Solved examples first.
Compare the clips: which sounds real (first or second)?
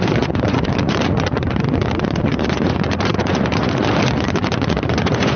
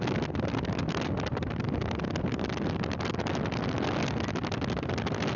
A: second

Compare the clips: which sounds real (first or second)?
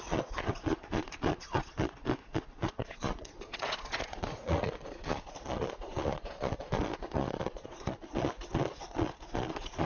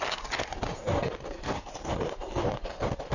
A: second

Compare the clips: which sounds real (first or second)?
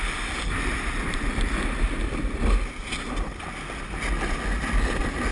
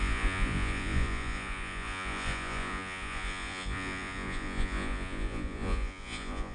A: first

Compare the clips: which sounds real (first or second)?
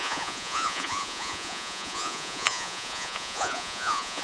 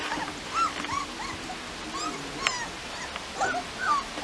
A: second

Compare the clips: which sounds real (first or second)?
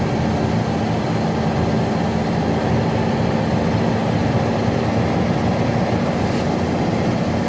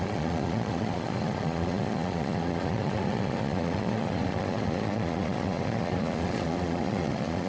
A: first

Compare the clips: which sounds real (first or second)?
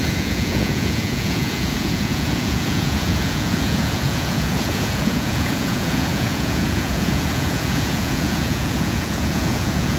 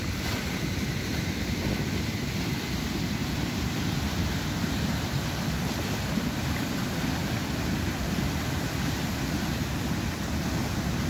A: second